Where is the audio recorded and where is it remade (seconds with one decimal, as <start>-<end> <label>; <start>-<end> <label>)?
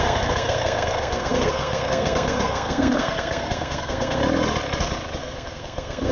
0.0-4.2 remade; 4.2-5.2 recorded; 5.2-6.1 remade